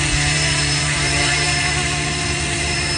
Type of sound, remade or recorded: remade